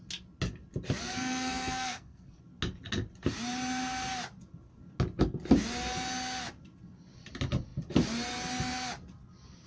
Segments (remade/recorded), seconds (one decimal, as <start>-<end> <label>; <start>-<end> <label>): 0.0-1.0 recorded; 1.0-2.4 remade; 2.4-9.7 recorded

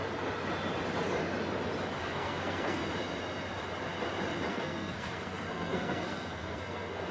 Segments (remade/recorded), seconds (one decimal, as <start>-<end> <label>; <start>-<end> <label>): 0.0-2.0 recorded; 2.0-2.8 remade; 2.8-4.5 recorded; 4.5-7.1 remade

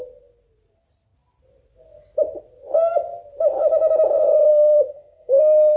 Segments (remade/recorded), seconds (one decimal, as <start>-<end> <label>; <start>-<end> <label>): 0.0-4.5 recorded; 4.5-5.8 remade

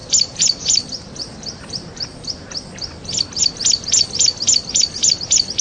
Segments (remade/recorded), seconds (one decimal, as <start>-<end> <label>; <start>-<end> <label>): 0.0-5.6 recorded

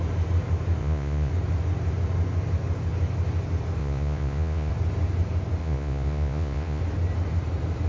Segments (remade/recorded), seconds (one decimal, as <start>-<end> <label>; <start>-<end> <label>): 0.0-0.8 recorded; 0.8-1.3 remade; 1.3-3.8 recorded; 3.8-4.7 remade; 4.7-5.6 recorded; 5.6-6.8 remade; 6.8-7.9 recorded

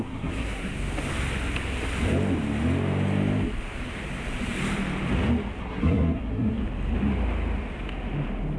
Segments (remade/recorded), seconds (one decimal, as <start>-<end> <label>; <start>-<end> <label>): 0.0-0.7 remade; 0.7-5.6 recorded; 5.6-6.6 remade; 6.6-8.6 recorded